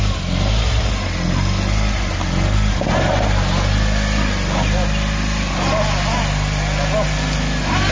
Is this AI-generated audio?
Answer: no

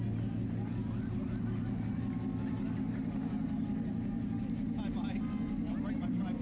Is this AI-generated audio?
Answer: no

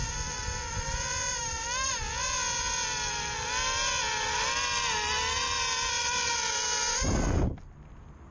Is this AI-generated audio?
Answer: no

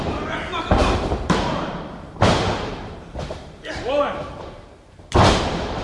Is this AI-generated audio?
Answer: yes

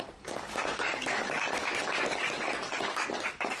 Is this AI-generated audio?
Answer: yes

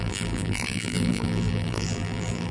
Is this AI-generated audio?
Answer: yes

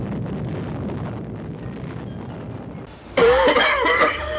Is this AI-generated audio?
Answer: no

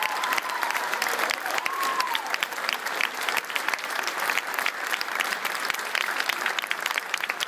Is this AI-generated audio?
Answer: yes